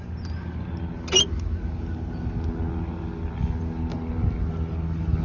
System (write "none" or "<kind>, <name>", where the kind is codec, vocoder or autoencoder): none